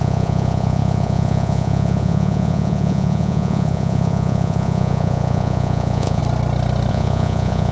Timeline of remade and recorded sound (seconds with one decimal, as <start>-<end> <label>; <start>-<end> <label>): 0.0-6.2 remade; 6.2-6.9 recorded; 6.9-7.7 remade